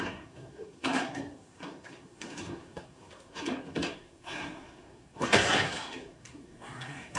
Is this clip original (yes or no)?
no